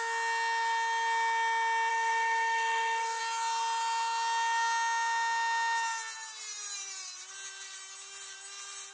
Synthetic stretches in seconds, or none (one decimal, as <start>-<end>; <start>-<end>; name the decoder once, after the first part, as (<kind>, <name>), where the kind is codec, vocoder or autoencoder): 1.9-3.2 (codec, SNAC)